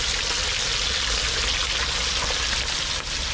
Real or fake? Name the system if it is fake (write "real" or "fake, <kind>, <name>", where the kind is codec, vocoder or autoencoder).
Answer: real